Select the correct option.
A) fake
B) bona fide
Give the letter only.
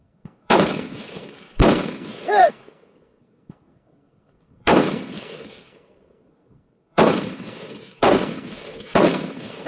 A